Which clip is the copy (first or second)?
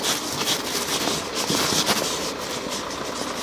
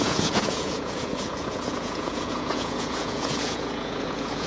second